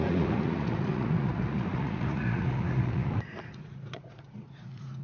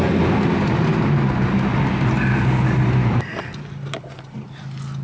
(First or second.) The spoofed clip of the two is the first